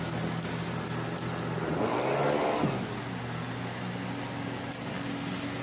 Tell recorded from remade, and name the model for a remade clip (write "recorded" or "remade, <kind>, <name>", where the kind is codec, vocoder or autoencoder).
recorded